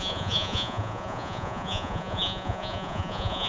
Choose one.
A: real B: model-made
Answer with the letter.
B